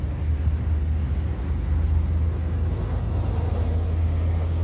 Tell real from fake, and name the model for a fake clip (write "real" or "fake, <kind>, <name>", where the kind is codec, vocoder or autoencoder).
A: real